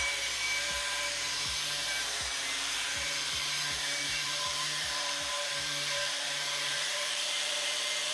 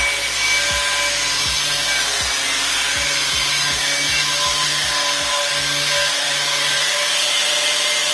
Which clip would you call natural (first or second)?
second